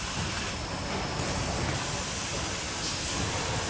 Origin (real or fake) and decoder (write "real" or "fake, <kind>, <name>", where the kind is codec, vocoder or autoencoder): real